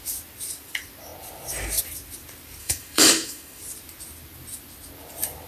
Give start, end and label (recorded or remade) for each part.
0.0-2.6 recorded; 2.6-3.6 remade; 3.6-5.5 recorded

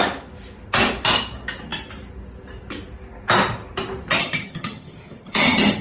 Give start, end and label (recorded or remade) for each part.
0.0-4.2 recorded; 4.2-5.8 remade

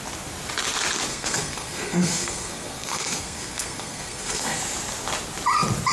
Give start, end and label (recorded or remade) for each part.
0.0-1.1 recorded; 1.1-4.6 remade; 4.6-5.9 recorded

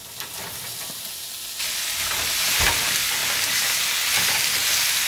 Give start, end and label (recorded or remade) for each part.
0.0-5.1 recorded